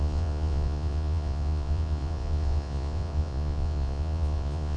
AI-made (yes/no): yes